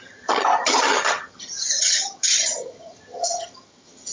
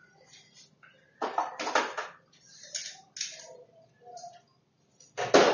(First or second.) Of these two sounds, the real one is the second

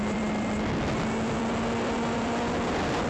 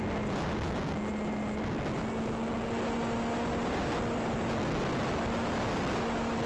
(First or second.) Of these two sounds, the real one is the second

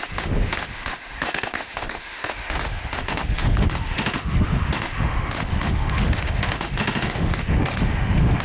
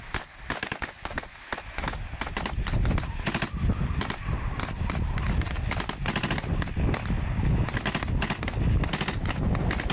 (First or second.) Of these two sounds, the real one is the second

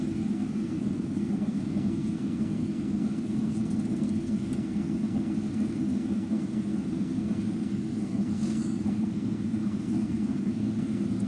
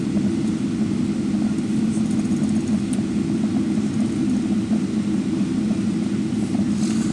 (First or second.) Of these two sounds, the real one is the second